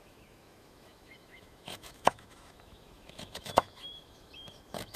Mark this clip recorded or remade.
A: remade